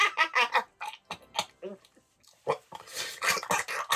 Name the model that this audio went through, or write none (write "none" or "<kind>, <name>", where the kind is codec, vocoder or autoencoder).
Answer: none